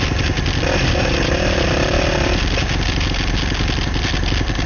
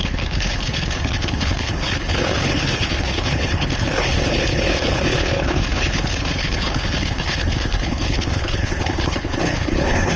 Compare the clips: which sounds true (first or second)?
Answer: first